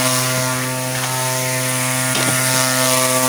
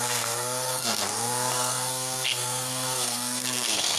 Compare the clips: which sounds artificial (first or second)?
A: second